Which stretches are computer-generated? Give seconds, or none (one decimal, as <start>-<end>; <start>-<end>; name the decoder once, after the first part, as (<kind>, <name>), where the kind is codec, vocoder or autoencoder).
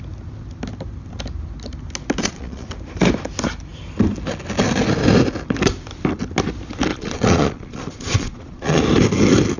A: 2.2-2.7 (vocoder, Vocos); 6.9-8.8